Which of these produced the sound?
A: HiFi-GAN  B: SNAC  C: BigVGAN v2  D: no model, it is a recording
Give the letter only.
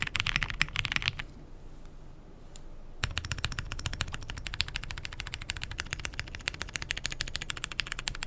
D